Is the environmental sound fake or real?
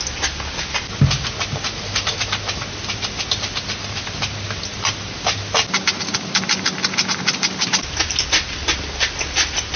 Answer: real